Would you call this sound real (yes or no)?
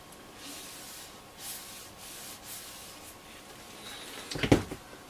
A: yes